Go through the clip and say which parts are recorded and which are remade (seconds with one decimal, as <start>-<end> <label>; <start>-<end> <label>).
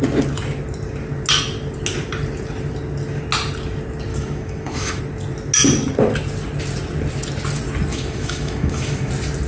0.0-4.1 recorded; 4.1-5.0 remade; 5.0-7.9 recorded; 7.9-9.1 remade; 9.1-9.5 recorded